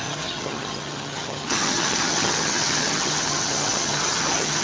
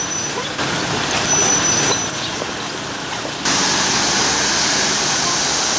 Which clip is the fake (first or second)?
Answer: first